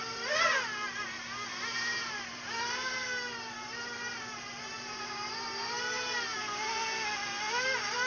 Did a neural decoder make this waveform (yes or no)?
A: yes